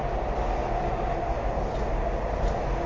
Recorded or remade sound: recorded